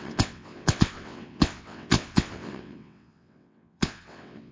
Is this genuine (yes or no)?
no